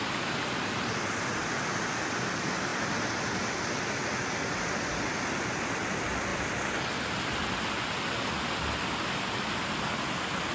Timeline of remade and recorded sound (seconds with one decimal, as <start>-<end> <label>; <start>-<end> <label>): 0.0-1.4 recorded; 1.4-2.3 remade; 2.3-6.3 recorded; 6.3-8.4 remade; 8.4-10.5 recorded